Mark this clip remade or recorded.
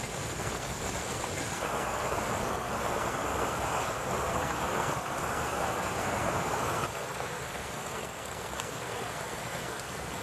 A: remade